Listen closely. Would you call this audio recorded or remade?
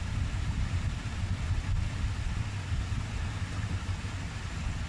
recorded